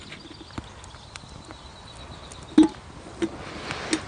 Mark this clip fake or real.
real